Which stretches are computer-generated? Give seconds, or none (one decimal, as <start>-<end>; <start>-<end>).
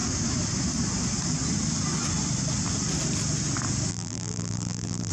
3.9-5.1